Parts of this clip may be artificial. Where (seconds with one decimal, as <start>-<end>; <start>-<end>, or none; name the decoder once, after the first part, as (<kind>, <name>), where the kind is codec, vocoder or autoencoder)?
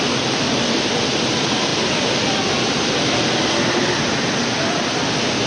none